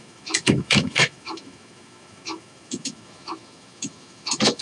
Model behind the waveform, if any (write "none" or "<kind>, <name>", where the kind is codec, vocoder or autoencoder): autoencoder, DAC-VAE